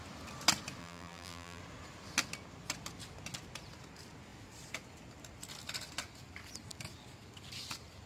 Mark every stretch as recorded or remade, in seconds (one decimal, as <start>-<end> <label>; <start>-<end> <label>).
0.0-0.8 recorded; 0.8-1.6 remade; 1.6-8.1 recorded